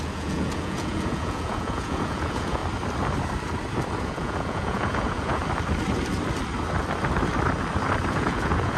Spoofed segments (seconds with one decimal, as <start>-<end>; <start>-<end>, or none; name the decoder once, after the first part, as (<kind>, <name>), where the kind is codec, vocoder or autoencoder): 0.0-2.6 (vocoder, Vocos); 4.0-5.4; 8.1-8.8